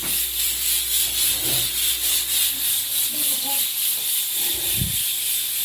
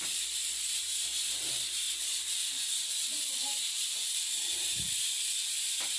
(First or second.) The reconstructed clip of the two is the second